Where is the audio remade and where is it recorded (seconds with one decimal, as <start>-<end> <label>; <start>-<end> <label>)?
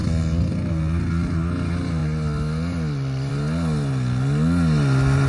0.0-5.3 recorded